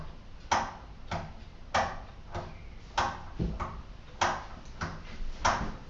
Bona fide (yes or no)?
yes